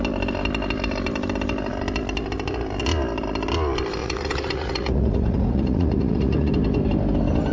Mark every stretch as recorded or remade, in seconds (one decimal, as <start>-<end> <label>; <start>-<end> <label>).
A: 0.0-4.0 recorded; 4.0-6.5 remade; 6.5-7.5 recorded